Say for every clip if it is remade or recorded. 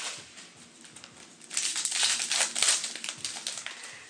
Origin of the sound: recorded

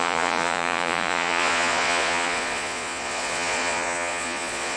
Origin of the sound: remade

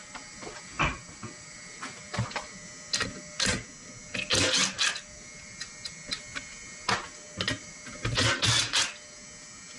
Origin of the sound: recorded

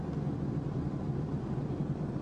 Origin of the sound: remade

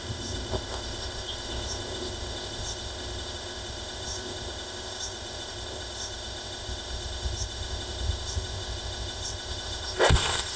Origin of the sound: remade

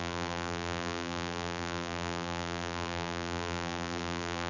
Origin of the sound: remade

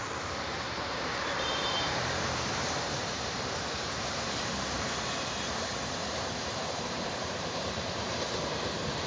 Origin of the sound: remade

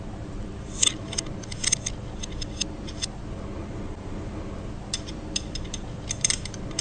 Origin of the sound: remade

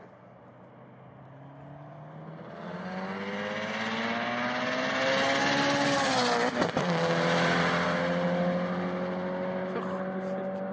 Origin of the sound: recorded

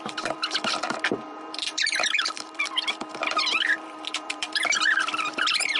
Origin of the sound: remade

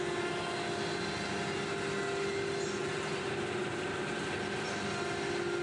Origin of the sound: recorded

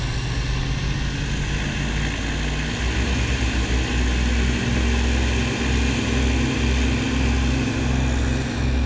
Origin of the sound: recorded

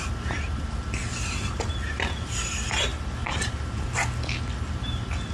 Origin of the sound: recorded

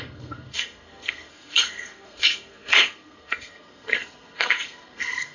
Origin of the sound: remade